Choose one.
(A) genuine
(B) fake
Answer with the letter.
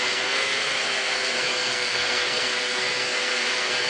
B